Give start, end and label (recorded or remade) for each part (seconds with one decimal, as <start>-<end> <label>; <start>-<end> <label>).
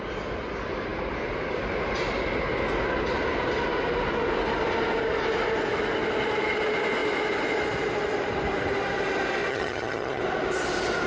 0.0-9.5 recorded; 9.5-10.2 remade; 10.2-11.1 recorded